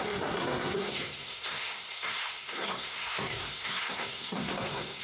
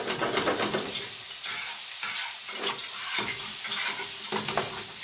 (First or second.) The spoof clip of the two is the first